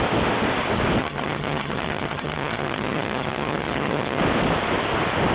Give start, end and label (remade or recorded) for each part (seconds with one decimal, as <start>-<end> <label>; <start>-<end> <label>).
0.0-1.0 recorded; 1.0-4.2 remade; 4.2-5.3 recorded

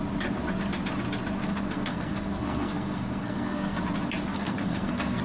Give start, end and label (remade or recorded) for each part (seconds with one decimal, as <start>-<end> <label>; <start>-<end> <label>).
0.0-1.4 recorded; 1.4-3.8 remade; 3.8-4.3 recorded; 4.3-5.2 remade